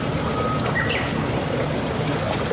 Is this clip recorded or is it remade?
recorded